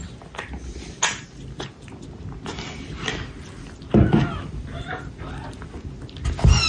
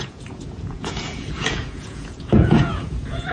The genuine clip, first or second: first